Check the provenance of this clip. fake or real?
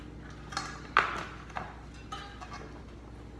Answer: real